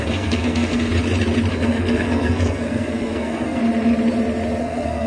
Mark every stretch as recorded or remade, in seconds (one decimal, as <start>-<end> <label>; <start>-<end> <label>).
0.0-0.9 remade; 0.9-1.5 recorded; 1.5-3.6 remade; 3.6-4.6 recorded; 4.6-5.1 remade